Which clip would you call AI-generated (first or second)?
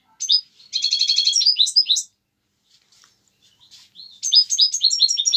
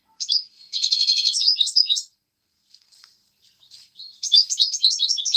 second